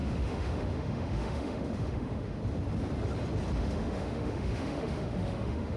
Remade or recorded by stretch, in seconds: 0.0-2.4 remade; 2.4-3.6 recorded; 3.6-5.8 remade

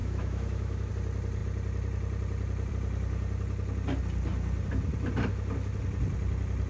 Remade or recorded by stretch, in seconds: 0.0-0.9 remade; 0.9-6.7 recorded

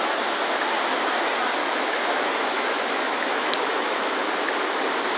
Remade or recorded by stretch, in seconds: 0.0-1.6 recorded; 1.6-4.3 remade; 4.3-5.2 recorded

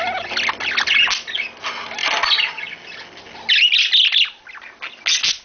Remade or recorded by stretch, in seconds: 0.0-5.4 recorded

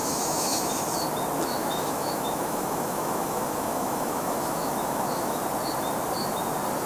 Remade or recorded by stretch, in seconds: 0.0-0.7 remade; 0.7-1.6 recorded; 1.6-5.4 remade; 5.4-6.9 recorded